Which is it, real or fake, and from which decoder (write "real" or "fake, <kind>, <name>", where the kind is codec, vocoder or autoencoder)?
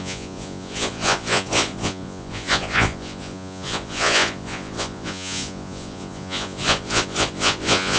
fake, vocoder, Vocos